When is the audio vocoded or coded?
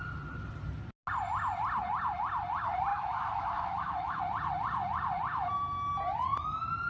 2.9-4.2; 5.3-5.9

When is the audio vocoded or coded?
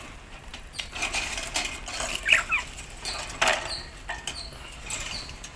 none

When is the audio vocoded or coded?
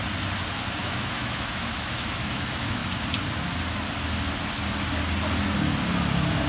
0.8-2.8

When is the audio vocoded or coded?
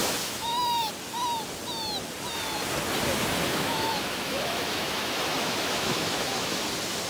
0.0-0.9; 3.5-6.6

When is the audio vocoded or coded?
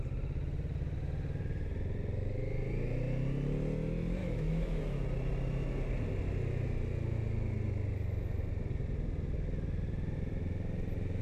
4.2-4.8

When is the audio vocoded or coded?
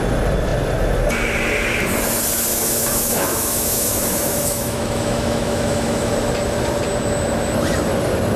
2.5-6.1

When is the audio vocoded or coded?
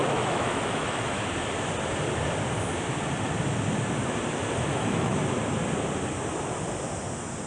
0.0-1.2; 4.7-5.2